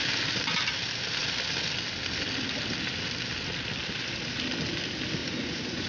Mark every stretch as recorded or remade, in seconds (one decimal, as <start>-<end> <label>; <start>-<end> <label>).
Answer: 0.0-5.2 recorded; 5.2-5.9 remade